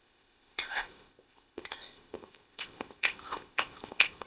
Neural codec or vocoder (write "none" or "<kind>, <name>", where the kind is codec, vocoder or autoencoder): codec, ZipCodec